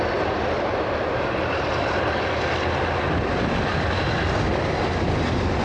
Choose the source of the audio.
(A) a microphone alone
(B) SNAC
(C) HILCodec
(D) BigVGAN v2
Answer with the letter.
A